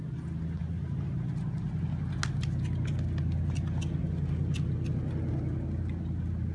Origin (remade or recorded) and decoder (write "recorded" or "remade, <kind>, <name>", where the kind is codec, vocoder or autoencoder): recorded